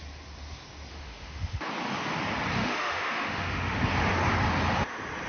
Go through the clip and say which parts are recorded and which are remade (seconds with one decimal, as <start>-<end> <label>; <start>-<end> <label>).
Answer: 0.0-0.9 recorded; 0.9-1.6 remade; 1.6-2.6 recorded; 2.6-3.8 remade; 3.8-5.3 recorded

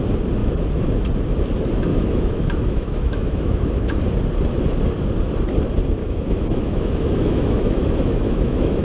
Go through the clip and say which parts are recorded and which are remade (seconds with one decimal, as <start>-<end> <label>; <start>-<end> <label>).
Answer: 0.0-0.4 recorded; 0.4-0.9 remade; 0.9-1.9 recorded; 1.9-4.0 remade; 4.0-6.0 recorded; 6.0-8.8 remade

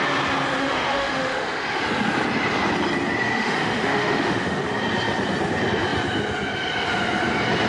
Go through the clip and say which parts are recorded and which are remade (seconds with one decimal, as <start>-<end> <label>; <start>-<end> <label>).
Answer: 0.0-0.6 recorded; 0.6-1.8 remade; 1.8-3.3 recorded; 3.3-4.6 remade; 4.6-7.7 recorded

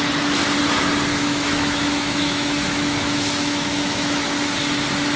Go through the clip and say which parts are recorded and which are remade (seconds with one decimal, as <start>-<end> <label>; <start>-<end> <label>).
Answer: 0.0-1.1 recorded; 1.1-4.2 remade; 4.2-5.2 recorded

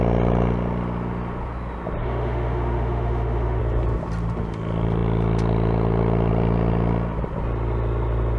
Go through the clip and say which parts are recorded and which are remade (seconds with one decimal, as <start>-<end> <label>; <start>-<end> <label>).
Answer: 0.0-2.0 recorded; 2.0-3.6 remade; 3.6-8.4 recorded

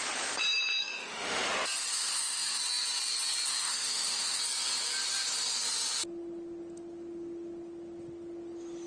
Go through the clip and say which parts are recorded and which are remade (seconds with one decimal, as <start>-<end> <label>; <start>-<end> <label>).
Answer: 0.0-0.8 recorded; 0.8-1.5 remade; 1.5-1.9 recorded; 1.9-2.6 remade; 2.6-3.5 recorded; 3.5-4.4 remade; 4.4-8.9 recorded

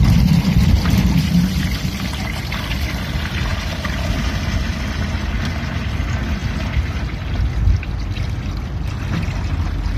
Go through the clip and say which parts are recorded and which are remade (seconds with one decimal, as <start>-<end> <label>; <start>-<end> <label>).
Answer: 0.0-10.0 recorded

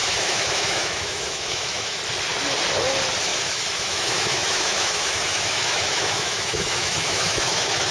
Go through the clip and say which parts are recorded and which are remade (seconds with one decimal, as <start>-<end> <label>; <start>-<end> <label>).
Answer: 0.0-2.0 remade; 2.0-3.3 recorded; 3.3-7.9 remade